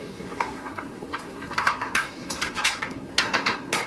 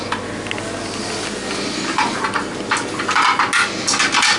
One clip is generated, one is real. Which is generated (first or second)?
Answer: first